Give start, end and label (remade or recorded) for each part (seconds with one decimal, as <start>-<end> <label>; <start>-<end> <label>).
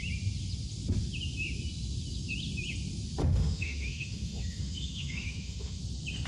0.0-3.2 recorded; 3.2-5.8 remade; 5.8-6.3 recorded